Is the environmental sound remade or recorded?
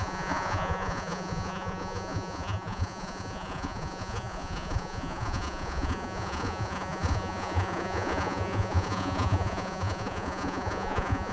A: remade